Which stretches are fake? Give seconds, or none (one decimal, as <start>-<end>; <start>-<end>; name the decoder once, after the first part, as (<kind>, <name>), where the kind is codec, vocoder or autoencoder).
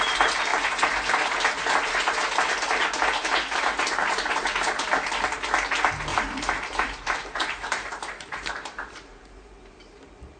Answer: 0.5-4.3 (vocoder, BigVGAN v2); 6.1-10.0